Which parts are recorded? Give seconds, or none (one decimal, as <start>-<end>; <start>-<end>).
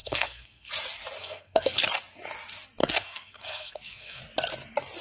0.7-1.2; 1.8-2.8; 4.2-5.0